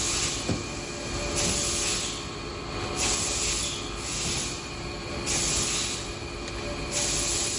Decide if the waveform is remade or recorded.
recorded